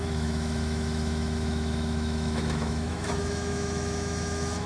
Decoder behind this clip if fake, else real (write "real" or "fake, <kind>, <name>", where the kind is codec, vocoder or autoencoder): fake, autoencoder, DAC-VAE